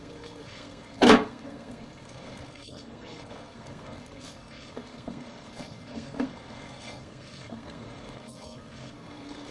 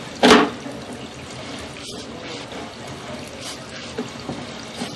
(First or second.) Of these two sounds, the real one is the second